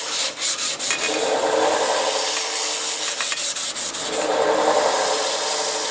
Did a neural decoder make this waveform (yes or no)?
no